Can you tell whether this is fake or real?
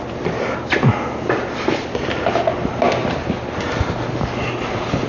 real